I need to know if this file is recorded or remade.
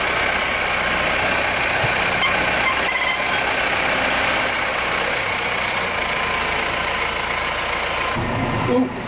recorded